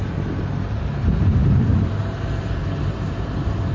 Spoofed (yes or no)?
no